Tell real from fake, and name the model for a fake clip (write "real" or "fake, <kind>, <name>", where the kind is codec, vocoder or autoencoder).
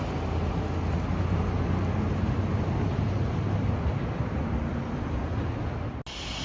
real